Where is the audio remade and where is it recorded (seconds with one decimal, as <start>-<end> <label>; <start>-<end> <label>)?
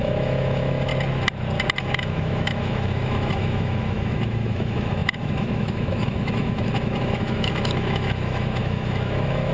0.0-0.9 remade; 0.9-1.8 recorded; 1.8-9.5 remade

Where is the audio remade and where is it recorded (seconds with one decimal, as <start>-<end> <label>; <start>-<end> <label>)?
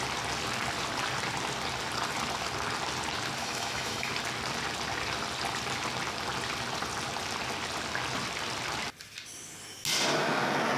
0.0-3.4 recorded; 3.4-4.1 remade; 4.1-10.8 recorded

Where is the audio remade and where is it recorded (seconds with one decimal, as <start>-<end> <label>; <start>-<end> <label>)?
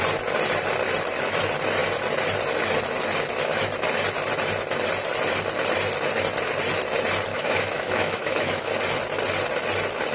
0.0-7.3 recorded; 7.3-8.7 remade; 8.7-10.1 recorded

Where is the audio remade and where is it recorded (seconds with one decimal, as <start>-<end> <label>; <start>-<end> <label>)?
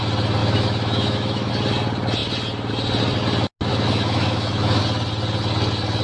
0.0-0.4 recorded; 0.4-1.5 remade; 1.5-3.7 recorded; 3.7-4.8 remade; 4.8-6.0 recorded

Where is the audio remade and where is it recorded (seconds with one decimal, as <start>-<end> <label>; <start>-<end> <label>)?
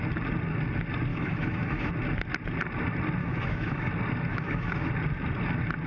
0.0-1.1 recorded; 1.1-1.9 remade; 1.9-3.2 recorded; 3.2-3.9 remade; 3.9-4.3 recorded; 4.3-4.9 remade; 4.9-5.9 recorded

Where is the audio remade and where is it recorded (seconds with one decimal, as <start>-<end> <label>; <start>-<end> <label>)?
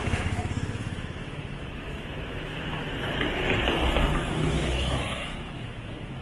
0.0-2.8 remade; 2.8-4.3 recorded; 4.3-6.2 remade